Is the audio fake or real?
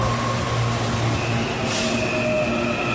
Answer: real